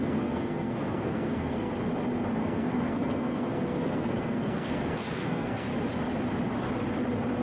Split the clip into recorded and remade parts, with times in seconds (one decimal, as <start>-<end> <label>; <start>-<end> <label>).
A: 0.0-1.7 remade; 1.7-2.4 recorded; 2.4-5.7 remade; 5.7-7.4 recorded